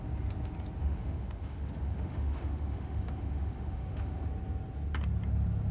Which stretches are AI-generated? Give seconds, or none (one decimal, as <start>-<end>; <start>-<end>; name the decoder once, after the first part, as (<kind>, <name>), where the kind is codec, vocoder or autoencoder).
0.8-4.2 (autoencoder, DAC-VAE)